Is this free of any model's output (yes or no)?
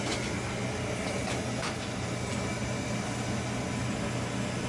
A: yes